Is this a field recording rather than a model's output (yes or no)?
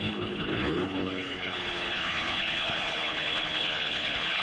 no